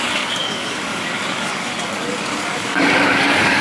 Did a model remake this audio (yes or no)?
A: yes